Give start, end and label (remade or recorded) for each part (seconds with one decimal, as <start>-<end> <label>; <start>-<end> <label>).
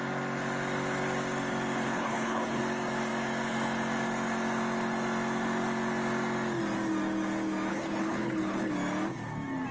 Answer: 0.0-1.9 recorded; 1.9-2.6 remade; 2.6-7.7 recorded; 7.7-8.7 remade; 8.7-9.7 recorded